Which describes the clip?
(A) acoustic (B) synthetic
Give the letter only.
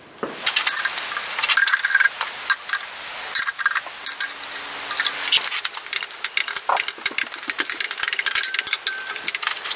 A